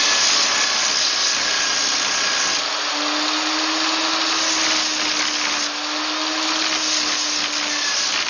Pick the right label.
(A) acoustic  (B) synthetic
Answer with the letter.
A